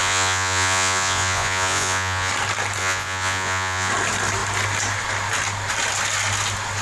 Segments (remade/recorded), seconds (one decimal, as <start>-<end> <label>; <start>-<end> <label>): 0.0-2.3 remade; 2.3-2.8 recorded; 2.8-3.9 remade; 3.9-6.8 recorded